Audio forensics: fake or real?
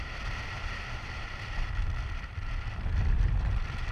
fake